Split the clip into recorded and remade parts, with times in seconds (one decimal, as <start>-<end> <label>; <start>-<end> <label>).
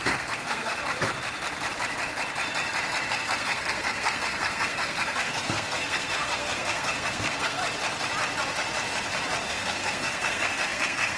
0.0-0.7 remade; 0.7-3.1 recorded; 3.1-7.6 remade; 7.6-9.5 recorded; 9.5-11.2 remade